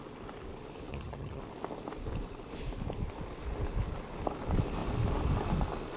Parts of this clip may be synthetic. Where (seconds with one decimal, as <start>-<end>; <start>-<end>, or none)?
0.9-1.4